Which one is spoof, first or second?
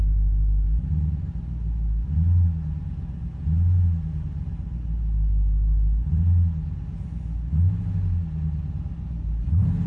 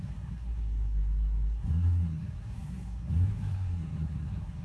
second